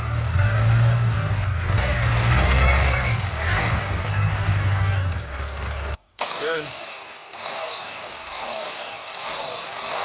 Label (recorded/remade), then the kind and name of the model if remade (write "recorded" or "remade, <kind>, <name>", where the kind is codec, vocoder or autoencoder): remade, codec, DAC